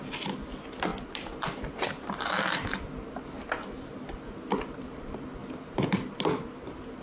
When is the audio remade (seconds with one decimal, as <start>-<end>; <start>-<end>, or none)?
none